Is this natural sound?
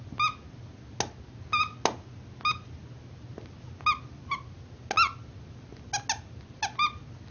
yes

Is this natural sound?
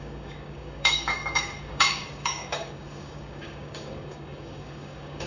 no